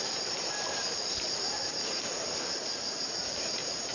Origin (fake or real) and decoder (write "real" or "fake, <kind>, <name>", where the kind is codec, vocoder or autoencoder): fake, vocoder, BigVGAN v2